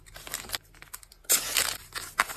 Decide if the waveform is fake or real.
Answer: real